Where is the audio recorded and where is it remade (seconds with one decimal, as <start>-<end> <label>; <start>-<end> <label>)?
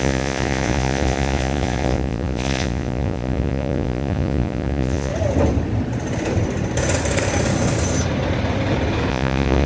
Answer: 0.0-5.1 remade; 5.1-9.1 recorded; 9.1-9.7 remade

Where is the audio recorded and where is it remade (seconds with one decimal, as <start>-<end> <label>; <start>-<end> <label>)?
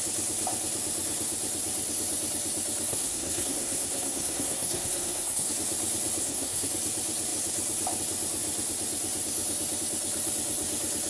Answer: 0.0-2.9 recorded; 2.9-5.5 remade; 5.5-6.2 recorded; 6.2-6.7 remade; 6.7-11.1 recorded